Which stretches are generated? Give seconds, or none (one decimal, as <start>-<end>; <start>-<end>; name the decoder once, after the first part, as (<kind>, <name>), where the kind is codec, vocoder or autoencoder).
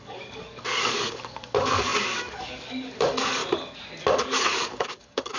0.0-3.4 (codec, DAC); 4.2-5.4